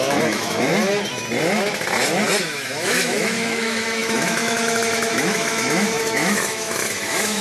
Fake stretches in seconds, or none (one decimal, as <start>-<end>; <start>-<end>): 0.0-0.7; 2.4-7.4